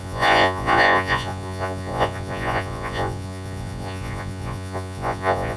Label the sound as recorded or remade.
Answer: remade